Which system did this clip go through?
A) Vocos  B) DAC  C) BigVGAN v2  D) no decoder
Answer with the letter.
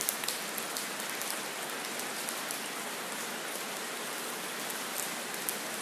D